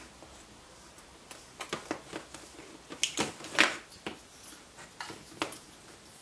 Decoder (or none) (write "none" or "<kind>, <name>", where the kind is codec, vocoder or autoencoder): none